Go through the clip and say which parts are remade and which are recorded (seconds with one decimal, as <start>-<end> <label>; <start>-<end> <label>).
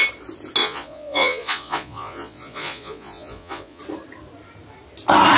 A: 0.0-0.6 recorded; 0.6-3.8 remade; 3.8-5.4 recorded